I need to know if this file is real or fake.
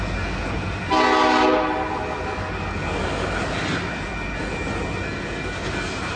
real